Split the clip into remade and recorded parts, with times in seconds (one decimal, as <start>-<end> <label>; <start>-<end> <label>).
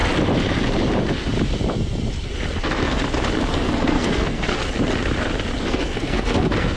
0.0-2.6 recorded; 2.6-3.0 remade; 3.0-3.5 recorded; 3.5-4.6 remade; 4.6-5.6 recorded; 5.6-6.8 remade